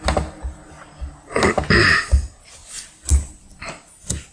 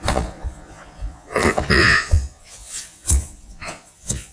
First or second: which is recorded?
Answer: first